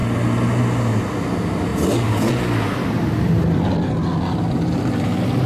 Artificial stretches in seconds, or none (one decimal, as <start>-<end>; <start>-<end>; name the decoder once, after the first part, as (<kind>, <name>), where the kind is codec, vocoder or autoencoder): none